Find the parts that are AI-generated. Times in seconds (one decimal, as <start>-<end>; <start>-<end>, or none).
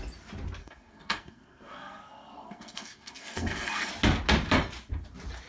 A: 0.6-3.9